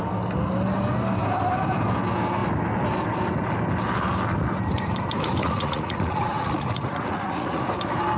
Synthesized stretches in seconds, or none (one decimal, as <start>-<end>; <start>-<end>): 5.4-7.7